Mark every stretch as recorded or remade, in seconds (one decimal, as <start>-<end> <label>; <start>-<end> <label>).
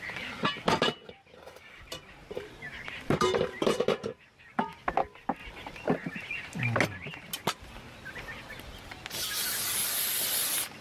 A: 0.0-2.2 recorded; 2.2-4.6 remade; 4.6-10.8 recorded